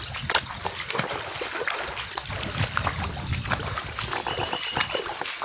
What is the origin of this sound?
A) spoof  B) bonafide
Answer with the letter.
B